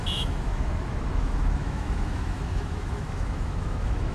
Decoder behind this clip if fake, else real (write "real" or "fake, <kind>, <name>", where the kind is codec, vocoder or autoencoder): fake, autoencoder, DAC-VAE